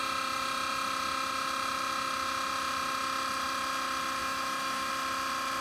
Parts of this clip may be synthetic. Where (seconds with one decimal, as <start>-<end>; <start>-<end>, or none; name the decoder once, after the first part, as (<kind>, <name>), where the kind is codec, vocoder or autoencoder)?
4.2-4.9 (autoencoder, DAC-VAE)